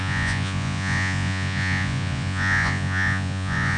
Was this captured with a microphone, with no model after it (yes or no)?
no